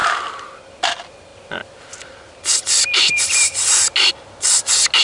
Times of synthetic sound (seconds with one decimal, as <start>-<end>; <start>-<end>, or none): none